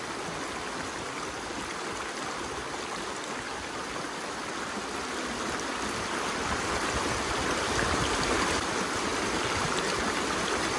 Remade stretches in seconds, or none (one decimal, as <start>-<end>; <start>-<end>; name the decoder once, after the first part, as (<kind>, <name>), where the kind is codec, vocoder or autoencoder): none